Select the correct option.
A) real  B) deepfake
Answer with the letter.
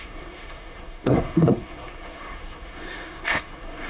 B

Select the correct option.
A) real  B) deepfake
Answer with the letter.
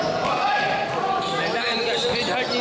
A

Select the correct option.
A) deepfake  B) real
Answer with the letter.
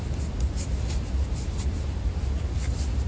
B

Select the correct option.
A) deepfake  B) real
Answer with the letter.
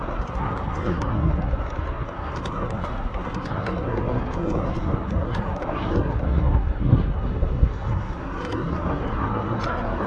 A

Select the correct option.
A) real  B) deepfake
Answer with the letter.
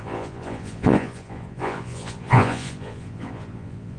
B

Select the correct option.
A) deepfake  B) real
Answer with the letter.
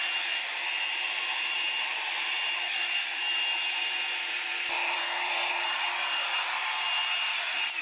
A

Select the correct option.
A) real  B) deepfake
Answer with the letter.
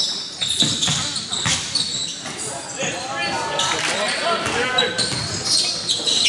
A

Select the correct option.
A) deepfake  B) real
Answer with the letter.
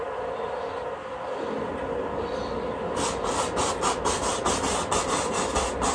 B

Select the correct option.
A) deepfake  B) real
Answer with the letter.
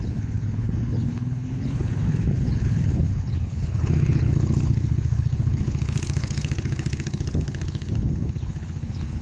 A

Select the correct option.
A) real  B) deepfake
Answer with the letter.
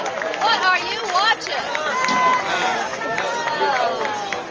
A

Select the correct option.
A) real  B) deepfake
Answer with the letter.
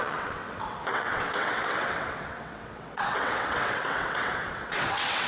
B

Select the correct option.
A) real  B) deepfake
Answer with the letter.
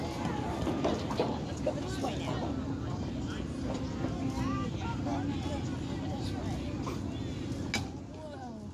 A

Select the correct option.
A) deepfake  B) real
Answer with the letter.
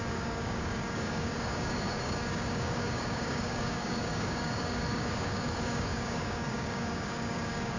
A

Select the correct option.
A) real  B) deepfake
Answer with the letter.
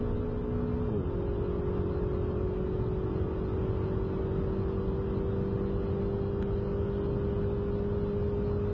A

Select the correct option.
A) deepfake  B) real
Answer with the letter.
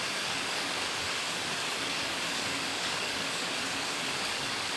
A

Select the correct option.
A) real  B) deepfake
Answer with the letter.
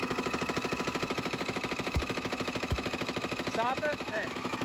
B